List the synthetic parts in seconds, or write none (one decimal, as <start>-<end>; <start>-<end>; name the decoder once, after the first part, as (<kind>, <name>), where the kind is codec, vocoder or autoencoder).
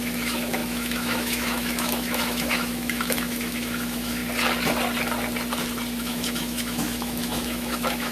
0.0-4.2 (autoencoder, DAC-VAE); 6.0-8.1